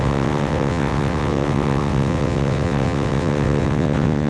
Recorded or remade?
remade